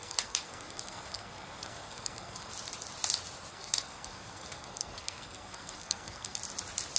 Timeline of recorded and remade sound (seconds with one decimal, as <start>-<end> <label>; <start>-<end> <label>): 0.0-2.5 remade; 2.5-3.5 recorded; 3.5-6.4 remade; 6.4-7.0 recorded